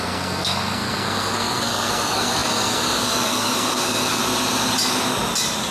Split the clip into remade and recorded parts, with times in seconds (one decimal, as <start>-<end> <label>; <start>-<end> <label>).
0.0-4.2 remade; 4.2-5.7 recorded

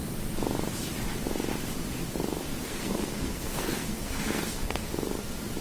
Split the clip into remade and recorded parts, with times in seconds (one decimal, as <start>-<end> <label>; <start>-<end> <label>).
0.0-2.6 recorded; 2.6-4.9 remade; 4.9-5.6 recorded

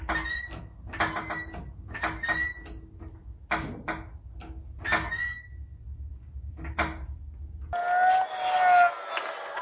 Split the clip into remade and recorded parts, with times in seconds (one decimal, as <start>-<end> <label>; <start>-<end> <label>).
0.0-9.6 recorded

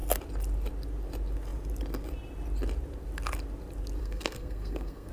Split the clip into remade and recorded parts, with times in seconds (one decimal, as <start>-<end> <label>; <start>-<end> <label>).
0.0-4.0 recorded; 4.0-5.1 remade